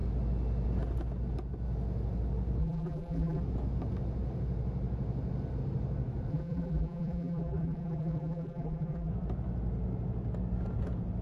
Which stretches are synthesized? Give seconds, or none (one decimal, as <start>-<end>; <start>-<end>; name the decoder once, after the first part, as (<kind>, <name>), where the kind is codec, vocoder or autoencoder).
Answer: 2.6-3.4 (vocoder, BigVGAN v2); 6.3-9.1